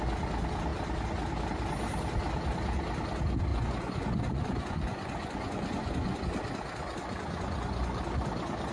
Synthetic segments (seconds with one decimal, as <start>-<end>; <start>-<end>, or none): 3.5-6.2; 7.0-8.0